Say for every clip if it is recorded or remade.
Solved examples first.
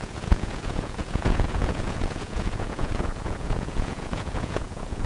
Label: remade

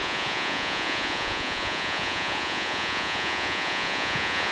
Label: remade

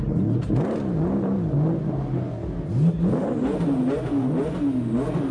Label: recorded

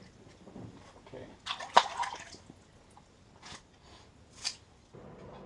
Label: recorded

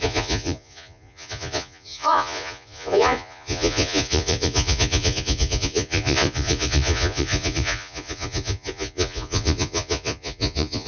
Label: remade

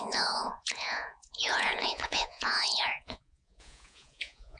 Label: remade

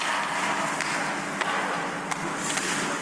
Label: recorded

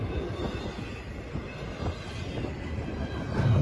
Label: recorded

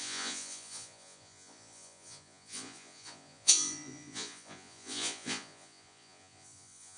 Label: remade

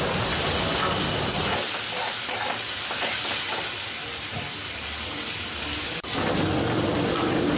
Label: recorded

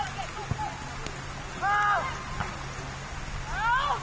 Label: recorded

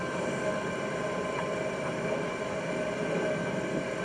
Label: recorded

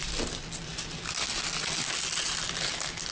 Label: recorded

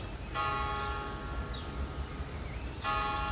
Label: recorded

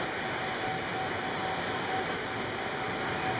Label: recorded